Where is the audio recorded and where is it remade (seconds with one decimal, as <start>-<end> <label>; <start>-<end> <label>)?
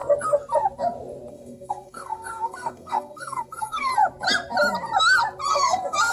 0.0-1.3 recorded; 1.3-3.9 remade; 3.9-5.5 recorded; 5.5-6.1 remade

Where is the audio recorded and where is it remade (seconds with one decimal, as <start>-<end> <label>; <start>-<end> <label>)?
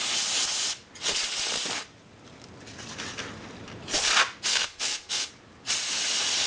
0.0-4.5 recorded; 4.5-5.3 remade; 5.3-6.5 recorded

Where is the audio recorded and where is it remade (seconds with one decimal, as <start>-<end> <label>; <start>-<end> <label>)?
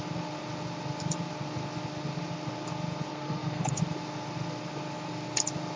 0.0-3.1 recorded; 3.1-3.8 remade; 3.8-5.8 recorded